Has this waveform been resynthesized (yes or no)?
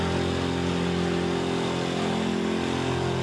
no